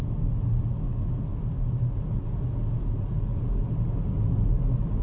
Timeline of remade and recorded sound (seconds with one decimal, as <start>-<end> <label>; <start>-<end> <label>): 0.0-5.0 recorded